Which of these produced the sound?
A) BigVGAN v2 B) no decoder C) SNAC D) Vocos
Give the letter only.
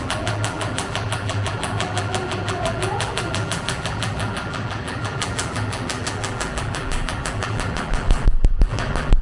A